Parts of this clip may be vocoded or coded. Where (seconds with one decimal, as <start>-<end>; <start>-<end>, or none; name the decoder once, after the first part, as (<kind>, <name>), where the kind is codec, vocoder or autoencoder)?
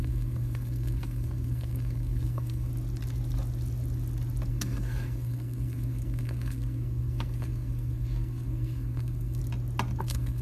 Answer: 0.0-2.7 (codec, SNAC); 4.5-9.4; 10.0-10.4